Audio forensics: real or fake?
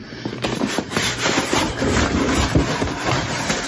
fake